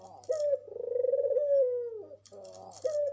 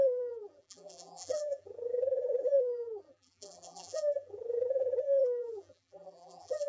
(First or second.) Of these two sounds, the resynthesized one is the second